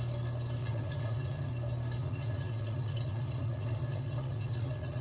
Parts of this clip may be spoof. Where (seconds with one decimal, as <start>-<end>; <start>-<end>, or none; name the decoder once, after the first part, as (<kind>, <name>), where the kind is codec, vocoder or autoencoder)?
0.6-1.5 (vocoder, Vocos); 2.0-5.0